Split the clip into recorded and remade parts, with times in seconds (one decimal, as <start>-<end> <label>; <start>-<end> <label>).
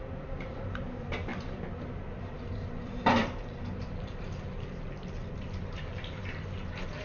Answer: 0.0-7.0 remade